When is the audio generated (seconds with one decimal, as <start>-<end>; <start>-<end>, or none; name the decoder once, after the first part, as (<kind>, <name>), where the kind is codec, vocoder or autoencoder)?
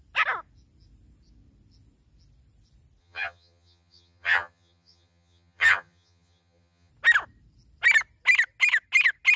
3.0-6.9 (vocoder, HiFi-GAN)